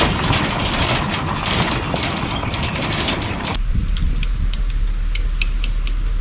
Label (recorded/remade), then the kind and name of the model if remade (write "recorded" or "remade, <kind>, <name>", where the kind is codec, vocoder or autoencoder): recorded